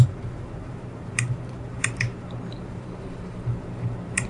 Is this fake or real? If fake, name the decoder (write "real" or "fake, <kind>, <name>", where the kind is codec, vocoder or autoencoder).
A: fake, vocoder, BigVGAN v2